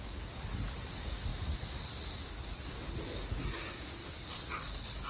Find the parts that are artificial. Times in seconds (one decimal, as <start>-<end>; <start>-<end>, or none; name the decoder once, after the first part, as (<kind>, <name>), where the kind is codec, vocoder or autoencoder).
none